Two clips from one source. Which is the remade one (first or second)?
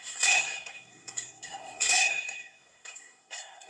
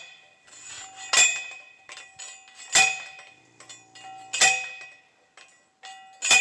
first